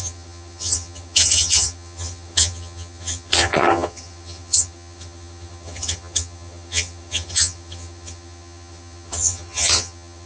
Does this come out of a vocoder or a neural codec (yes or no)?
yes